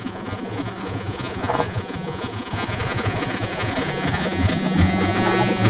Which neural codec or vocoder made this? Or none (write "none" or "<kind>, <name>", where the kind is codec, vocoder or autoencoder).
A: vocoder, Vocos